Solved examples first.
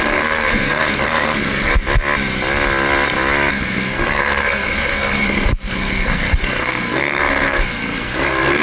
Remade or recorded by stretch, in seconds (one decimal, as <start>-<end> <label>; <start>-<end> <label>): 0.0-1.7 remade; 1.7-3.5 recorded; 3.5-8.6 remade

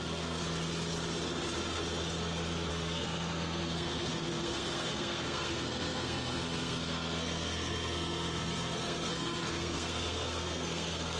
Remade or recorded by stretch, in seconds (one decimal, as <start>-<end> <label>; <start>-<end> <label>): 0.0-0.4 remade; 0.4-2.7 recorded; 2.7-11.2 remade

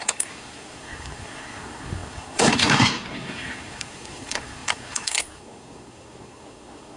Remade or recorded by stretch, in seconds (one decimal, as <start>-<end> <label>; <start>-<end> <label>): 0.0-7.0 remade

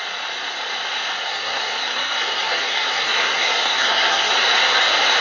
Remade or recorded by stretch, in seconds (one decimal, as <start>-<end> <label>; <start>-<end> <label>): 0.0-1.2 recorded; 1.2-4.3 remade; 4.3-5.2 recorded

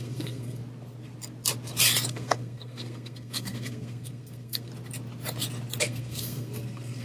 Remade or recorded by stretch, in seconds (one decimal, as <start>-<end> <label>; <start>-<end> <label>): 0.0-0.6 remade; 0.6-2.1 recorded; 2.1-4.7 remade; 4.7-5.8 recorded; 5.8-7.0 remade

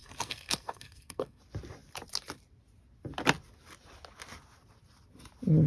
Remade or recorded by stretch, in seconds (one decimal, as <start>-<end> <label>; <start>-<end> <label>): 0.0-1.4 remade; 1.4-5.7 recorded